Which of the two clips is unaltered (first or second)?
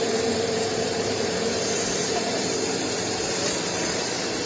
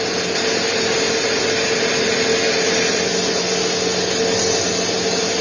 second